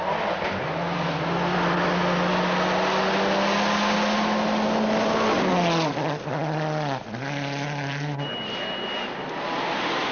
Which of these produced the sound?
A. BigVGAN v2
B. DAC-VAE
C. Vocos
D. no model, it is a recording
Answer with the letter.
D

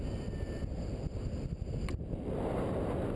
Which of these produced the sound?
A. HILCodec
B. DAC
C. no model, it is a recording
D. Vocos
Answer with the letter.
C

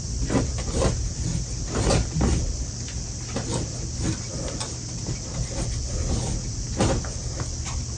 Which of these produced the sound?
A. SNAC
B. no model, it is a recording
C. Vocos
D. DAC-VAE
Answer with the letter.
B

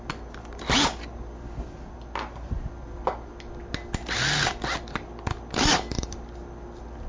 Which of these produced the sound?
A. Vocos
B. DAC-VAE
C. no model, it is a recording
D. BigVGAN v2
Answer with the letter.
C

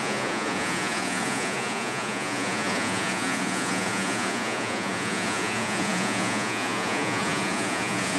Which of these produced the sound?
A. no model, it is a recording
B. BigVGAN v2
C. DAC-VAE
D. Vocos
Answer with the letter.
D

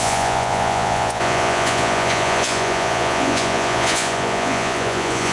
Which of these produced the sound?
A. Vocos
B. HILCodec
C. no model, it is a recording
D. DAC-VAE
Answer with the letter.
A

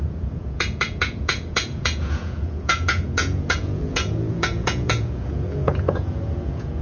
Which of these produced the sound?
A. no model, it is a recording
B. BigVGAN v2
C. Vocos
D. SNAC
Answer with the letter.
C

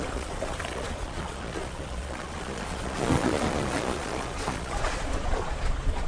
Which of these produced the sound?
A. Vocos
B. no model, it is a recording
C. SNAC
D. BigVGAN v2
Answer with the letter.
A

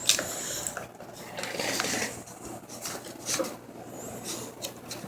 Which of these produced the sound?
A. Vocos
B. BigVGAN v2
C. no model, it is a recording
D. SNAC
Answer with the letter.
C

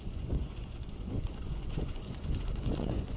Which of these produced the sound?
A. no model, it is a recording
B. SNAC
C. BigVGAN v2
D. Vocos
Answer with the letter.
D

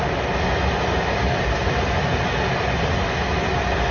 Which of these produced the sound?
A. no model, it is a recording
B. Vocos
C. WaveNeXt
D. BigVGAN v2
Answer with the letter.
A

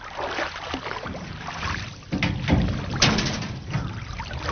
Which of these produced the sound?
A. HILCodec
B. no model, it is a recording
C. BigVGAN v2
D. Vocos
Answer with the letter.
B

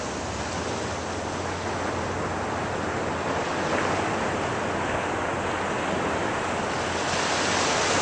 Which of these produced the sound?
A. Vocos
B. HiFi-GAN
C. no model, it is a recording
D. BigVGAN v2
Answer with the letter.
C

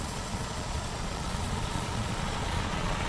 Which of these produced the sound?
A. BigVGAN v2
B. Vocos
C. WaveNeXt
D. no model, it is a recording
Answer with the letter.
B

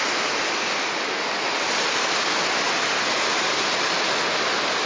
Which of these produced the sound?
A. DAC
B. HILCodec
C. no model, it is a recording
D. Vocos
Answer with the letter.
C